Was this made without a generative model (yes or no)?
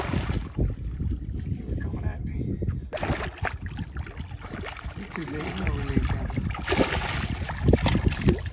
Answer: yes